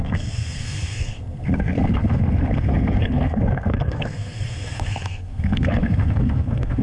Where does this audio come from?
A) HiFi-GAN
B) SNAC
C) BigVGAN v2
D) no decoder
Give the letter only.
B